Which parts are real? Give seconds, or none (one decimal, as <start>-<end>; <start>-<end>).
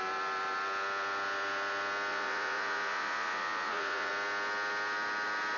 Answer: 0.0-2.1; 4.1-5.6